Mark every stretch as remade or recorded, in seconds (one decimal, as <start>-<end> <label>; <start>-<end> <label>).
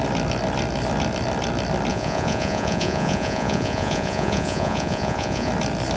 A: 0.0-1.9 recorded; 1.9-5.5 remade; 5.5-6.0 recorded